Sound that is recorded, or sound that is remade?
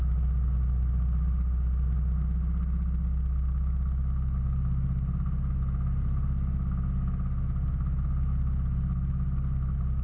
recorded